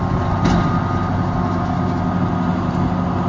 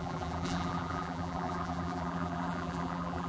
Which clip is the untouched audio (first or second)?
first